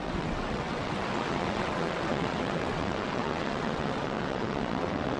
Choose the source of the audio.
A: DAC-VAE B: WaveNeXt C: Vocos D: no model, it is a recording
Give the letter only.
B